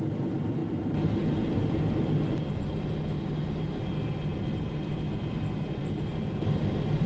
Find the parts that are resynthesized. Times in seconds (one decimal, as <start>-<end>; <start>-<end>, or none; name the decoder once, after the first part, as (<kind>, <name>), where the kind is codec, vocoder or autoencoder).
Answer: 0.0-3.1 (vocoder, BigVGAN v2); 4.4-7.1